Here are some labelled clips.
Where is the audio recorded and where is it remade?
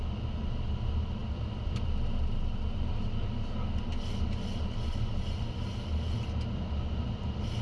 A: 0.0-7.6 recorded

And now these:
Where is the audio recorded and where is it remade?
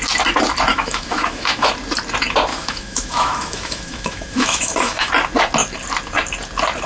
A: 0.0-0.7 recorded; 0.7-1.7 remade; 1.7-2.5 recorded; 2.5-5.1 remade; 5.1-6.9 recorded